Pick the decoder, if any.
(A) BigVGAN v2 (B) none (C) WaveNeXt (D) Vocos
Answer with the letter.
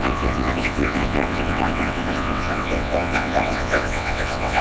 C